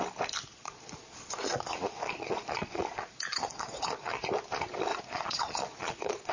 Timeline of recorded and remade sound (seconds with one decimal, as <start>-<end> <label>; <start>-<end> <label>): 0.0-0.5 recorded; 0.5-4.3 remade; 4.3-4.9 recorded; 4.9-6.3 remade